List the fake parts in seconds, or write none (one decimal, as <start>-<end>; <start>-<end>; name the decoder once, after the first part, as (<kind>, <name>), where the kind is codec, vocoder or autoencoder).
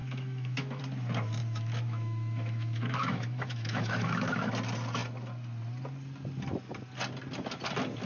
0.0-0.8 (autoencoder, DAC-VAE); 1.4-4.5